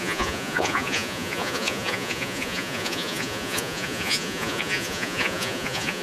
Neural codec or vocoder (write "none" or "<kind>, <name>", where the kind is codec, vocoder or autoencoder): vocoder, Vocos